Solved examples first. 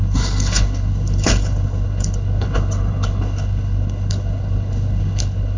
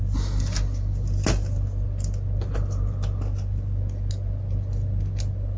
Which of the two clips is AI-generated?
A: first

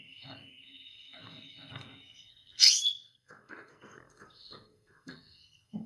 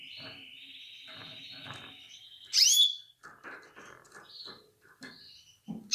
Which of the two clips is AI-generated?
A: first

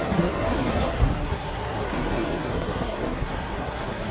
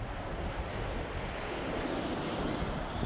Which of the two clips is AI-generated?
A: first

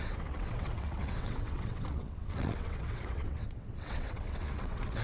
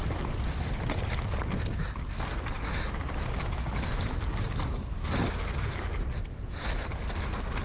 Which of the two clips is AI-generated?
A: first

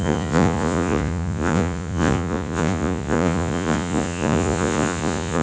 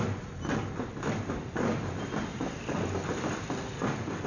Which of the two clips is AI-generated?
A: first